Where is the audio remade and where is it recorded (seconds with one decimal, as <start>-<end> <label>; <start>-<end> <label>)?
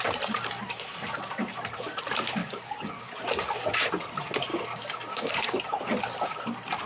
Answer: 0.0-2.4 recorded; 2.4-3.2 remade; 3.2-4.5 recorded; 4.5-5.6 remade; 5.6-6.9 recorded